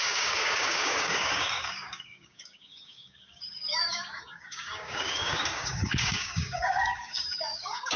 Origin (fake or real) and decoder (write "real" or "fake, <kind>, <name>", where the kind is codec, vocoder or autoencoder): fake, codec, DAC